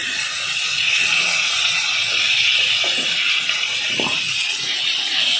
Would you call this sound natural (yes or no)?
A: no